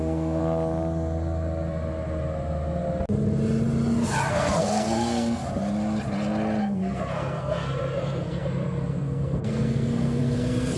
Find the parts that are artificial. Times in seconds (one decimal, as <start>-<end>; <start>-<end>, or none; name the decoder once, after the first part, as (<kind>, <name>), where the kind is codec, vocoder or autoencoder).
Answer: 0.0-0.4 (codec, SNAC); 4.3-5.4; 6.6-10.8